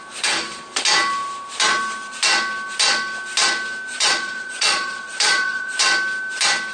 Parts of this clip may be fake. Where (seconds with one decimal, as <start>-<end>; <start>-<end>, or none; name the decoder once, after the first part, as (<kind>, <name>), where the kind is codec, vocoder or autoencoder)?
3.9-5.8 (vocoder, Vocos)